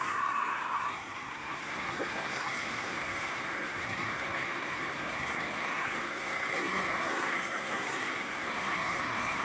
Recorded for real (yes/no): no